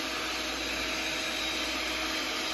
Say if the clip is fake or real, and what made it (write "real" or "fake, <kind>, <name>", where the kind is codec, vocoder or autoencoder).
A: real